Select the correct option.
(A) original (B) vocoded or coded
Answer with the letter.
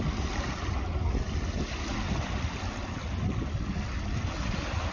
A